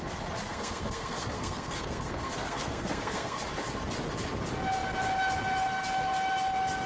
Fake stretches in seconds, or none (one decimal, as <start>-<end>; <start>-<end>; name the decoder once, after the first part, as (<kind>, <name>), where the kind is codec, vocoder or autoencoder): 0.5-3.4 (codec, SNAC)